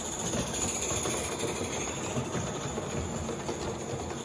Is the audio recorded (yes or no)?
yes